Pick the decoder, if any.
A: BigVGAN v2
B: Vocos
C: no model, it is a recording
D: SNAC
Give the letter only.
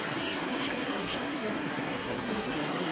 D